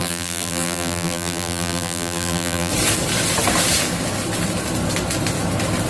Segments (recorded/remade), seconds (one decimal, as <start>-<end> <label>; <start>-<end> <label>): 0.0-2.7 remade; 2.7-5.9 recorded